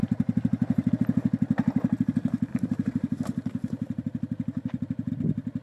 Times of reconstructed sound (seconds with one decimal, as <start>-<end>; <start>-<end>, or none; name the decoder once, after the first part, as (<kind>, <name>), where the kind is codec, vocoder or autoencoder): 0.0-0.9 (vocoder, BigVGAN v2); 2.5-5.1